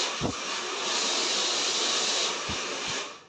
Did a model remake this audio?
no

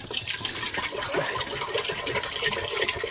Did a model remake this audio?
no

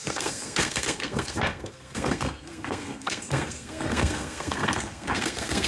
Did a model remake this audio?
yes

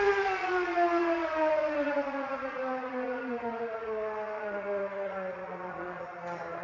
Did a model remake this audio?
yes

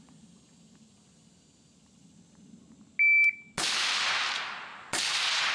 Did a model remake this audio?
no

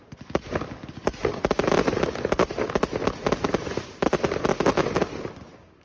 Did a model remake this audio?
no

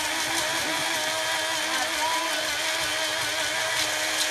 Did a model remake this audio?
no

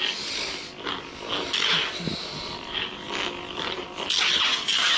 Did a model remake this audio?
no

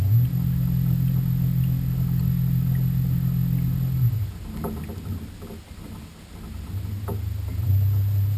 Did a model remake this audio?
no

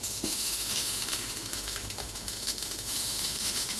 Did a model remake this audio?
yes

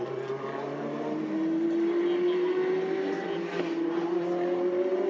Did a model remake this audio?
no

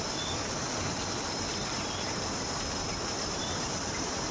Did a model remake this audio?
no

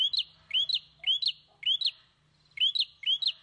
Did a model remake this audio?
no